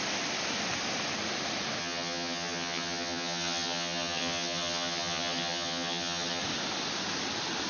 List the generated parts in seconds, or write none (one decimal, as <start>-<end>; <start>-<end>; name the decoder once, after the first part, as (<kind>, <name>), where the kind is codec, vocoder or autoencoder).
1.8-6.4 (vocoder, HiFi-GAN)